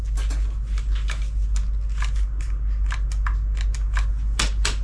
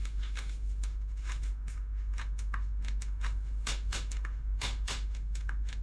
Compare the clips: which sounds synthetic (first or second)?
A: second